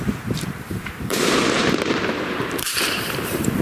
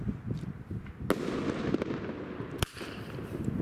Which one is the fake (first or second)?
first